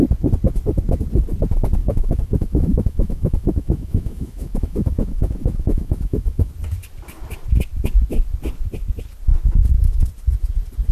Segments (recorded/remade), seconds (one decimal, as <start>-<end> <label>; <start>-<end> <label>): 0.0-1.8 recorded; 1.8-6.5 remade; 6.5-10.9 recorded